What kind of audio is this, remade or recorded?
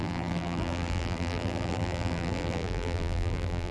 remade